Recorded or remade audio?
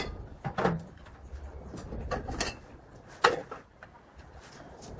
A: recorded